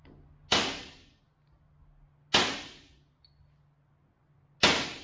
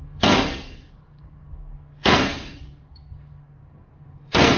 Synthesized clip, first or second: second